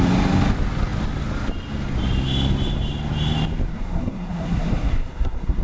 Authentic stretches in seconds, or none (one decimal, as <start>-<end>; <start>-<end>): 0.0-3.7